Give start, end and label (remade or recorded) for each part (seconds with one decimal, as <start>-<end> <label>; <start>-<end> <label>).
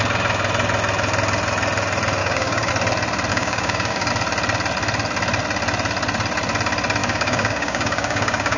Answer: 0.0-2.2 recorded; 2.2-2.7 remade; 2.7-3.3 recorded; 3.3-4.1 remade; 4.1-7.0 recorded; 7.0-8.6 remade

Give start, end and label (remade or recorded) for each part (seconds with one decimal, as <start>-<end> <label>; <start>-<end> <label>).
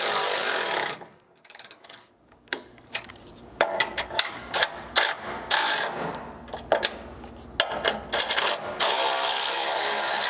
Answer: 0.0-4.6 remade; 4.6-8.6 recorded; 8.6-10.3 remade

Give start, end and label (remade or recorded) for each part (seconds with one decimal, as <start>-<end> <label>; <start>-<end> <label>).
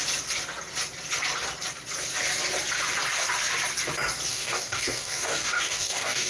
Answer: 0.0-4.3 recorded; 4.3-6.3 remade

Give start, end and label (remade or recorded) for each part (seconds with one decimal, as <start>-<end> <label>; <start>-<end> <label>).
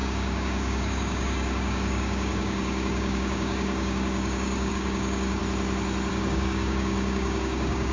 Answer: 0.0-5.4 remade; 5.4-6.1 recorded; 6.1-7.9 remade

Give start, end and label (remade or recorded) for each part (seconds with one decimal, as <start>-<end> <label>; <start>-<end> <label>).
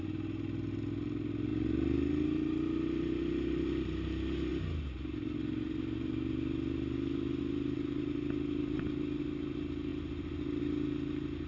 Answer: 0.0-11.5 recorded